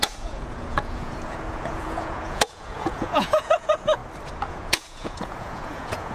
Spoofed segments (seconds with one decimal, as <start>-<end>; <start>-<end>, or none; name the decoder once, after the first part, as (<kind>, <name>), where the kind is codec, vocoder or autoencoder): 0.0-4.0 (vocoder, Vocos); 4.5-6.1